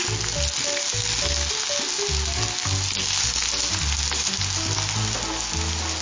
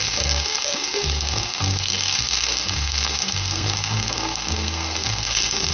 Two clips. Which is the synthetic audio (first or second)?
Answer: second